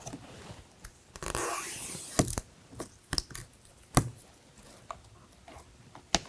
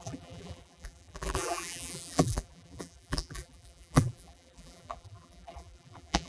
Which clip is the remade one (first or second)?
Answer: second